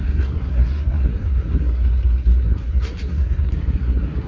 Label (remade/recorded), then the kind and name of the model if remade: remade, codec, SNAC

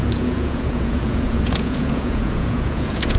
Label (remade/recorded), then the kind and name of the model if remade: remade, vocoder, Vocos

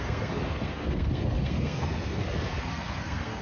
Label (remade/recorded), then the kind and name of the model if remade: remade, codec, SNAC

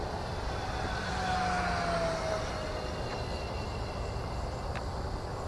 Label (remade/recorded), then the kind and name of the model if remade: recorded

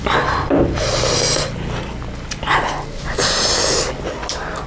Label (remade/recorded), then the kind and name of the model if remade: recorded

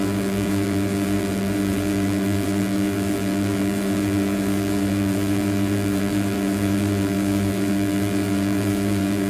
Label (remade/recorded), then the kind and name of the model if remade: remade, vocoder, BigVGAN v2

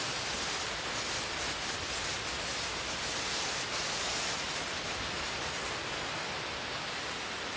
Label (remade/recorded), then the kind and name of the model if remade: recorded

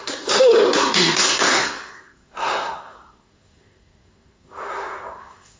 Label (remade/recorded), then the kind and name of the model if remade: remade, codec, SNAC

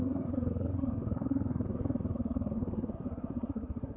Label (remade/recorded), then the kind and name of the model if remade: remade, codec, SNAC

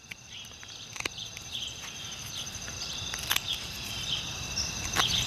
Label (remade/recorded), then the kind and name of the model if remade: remade, vocoder, BigVGAN v2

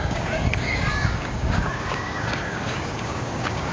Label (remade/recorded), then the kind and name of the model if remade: remade, codec, DAC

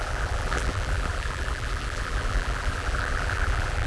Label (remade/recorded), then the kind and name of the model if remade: remade, vocoder, BigVGAN v2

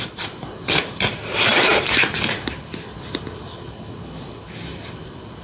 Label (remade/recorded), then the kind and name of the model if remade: recorded